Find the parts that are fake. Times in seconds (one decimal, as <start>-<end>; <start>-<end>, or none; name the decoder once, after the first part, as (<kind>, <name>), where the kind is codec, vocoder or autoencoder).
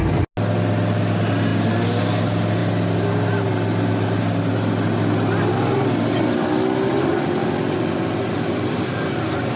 none